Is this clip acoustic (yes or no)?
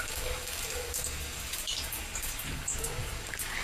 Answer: no